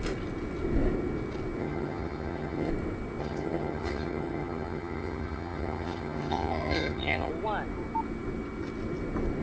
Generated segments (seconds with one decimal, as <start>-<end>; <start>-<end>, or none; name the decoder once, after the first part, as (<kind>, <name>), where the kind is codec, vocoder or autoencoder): 1.6-2.7 (vocoder, HiFi-GAN); 3.2-7.3